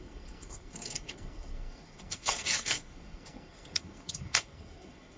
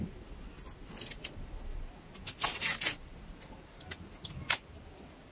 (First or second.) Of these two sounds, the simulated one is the first